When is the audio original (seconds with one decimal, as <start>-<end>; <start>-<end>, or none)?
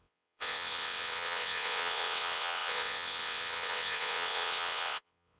none